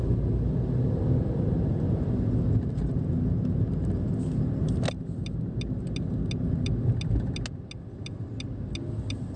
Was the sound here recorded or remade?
recorded